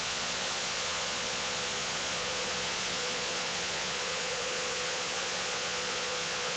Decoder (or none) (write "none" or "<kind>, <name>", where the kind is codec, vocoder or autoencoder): vocoder, Vocos